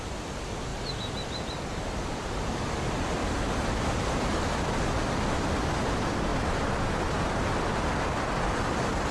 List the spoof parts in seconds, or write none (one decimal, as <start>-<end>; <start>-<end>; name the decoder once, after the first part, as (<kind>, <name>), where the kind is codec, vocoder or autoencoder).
none